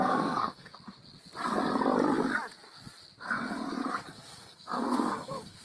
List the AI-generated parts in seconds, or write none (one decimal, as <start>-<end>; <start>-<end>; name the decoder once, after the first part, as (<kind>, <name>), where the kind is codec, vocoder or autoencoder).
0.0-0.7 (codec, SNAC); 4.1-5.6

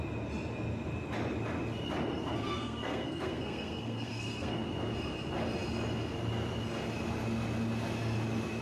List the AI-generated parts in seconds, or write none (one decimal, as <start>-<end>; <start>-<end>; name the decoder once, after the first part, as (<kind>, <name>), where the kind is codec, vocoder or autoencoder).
2.4-4.5 (codec, SNAC)

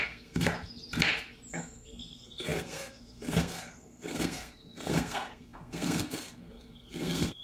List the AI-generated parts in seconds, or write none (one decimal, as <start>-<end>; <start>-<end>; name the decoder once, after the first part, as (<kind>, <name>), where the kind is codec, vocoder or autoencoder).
0.0-0.5 (codec, SNAC); 1.5-7.4

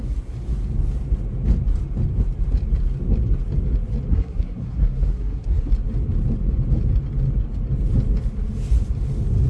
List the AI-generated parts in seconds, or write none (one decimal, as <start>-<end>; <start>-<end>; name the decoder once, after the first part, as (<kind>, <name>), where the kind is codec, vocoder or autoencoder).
4.1-5.7 (codec, SNAC)

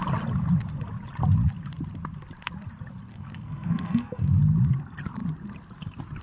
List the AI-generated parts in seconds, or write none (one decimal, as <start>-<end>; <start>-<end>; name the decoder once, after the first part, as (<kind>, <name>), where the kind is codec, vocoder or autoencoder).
3.1-4.4 (codec, SNAC)

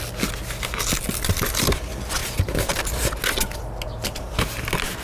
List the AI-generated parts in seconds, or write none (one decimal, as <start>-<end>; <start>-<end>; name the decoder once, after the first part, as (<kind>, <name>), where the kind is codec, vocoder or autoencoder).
none

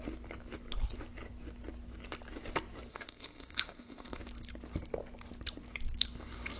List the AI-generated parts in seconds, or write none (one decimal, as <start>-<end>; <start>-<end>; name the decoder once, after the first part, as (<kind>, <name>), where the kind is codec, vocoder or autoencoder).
2.9-4.2 (codec, SNAC)

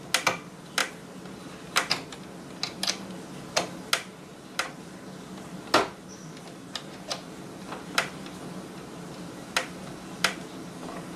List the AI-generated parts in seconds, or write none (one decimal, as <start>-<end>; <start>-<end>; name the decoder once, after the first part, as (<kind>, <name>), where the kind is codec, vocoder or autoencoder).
none